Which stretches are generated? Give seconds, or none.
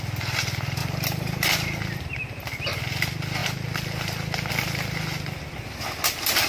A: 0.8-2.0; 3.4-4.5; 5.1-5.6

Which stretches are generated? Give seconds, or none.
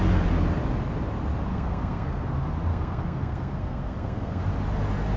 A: 1.5-2.2; 2.7-4.4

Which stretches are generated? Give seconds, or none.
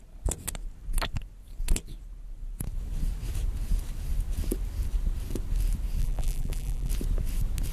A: 6.0-6.9